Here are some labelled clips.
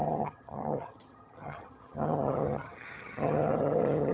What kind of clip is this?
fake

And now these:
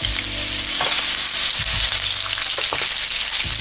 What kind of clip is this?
real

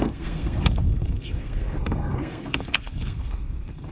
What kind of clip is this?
fake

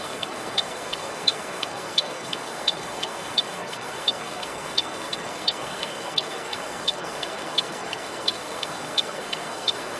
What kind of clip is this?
fake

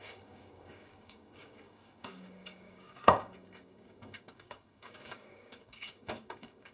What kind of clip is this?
fake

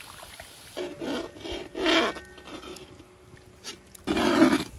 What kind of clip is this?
real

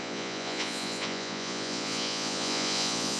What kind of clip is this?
fake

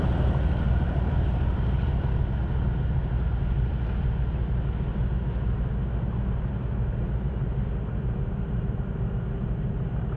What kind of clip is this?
real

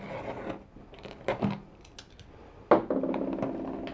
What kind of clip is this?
real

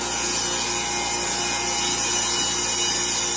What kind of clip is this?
real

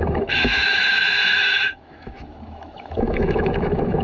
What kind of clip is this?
fake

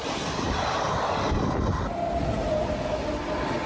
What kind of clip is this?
real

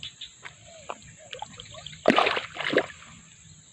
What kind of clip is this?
real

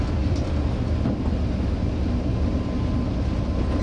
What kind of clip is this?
real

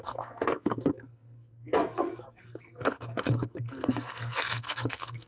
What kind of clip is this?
fake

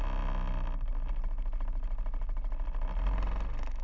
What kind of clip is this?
real